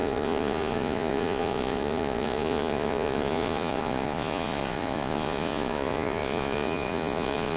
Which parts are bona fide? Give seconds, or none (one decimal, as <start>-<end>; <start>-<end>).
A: none

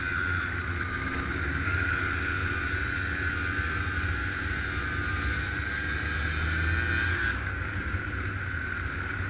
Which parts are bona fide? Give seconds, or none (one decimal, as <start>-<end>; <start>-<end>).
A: 0.0-0.9; 1.9-7.1; 7.6-9.3

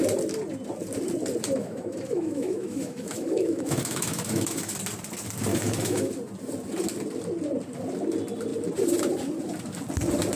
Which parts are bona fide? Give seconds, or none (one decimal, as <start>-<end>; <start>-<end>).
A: 0.0-1.6; 4.7-5.5; 6.1-10.4

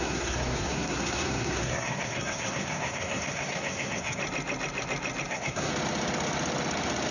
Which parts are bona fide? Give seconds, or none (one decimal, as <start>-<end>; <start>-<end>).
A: 4.2-5.3; 5.7-7.1

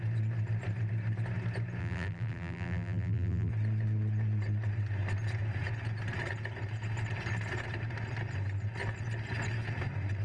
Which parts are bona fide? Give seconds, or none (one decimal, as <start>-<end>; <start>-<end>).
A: 0.0-1.8; 3.5-10.2

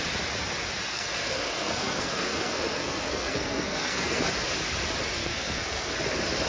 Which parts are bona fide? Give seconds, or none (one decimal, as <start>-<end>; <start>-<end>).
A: 0.0-0.9; 4.3-5.2; 5.9-6.5

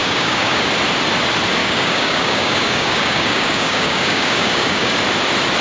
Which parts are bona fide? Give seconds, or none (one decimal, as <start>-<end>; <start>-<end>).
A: 0.7-1.6; 5.0-5.6

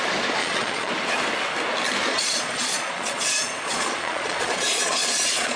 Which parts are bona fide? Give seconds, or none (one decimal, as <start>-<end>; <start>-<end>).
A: 0.0-0.4; 0.9-2.1